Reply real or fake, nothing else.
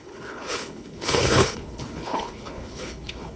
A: fake